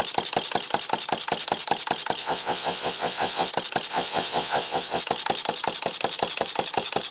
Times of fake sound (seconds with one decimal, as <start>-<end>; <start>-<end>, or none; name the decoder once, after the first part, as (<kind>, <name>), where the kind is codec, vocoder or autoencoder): 2.2-3.5 (vocoder, WaveNeXt); 3.9-5.0